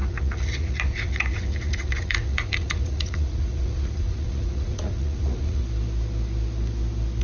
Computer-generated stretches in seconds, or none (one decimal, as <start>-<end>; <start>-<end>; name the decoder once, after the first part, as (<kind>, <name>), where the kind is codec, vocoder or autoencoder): 0.0-5.6 (vocoder, Vocos)

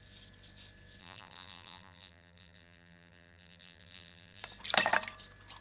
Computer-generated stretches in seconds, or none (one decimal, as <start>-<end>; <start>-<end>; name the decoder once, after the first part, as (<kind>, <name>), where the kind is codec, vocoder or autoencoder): 1.0-4.4 (vocoder, BigVGAN v2)